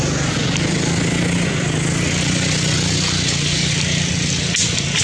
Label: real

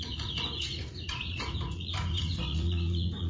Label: fake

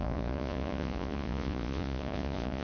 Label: fake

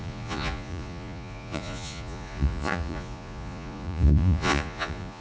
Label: fake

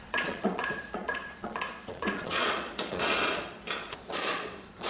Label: fake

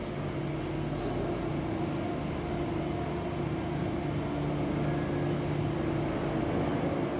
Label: real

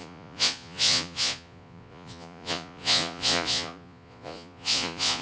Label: fake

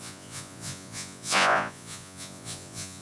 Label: fake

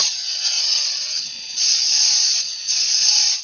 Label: fake